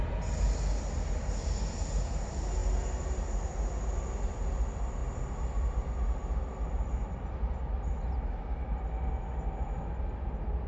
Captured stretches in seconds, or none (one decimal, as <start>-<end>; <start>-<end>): 0.0-10.7